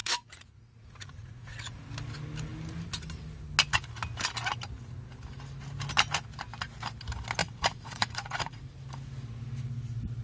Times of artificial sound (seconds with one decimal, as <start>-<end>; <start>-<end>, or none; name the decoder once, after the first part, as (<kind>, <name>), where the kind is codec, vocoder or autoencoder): 0.0-1.8 (vocoder, Vocos); 7.4-8.6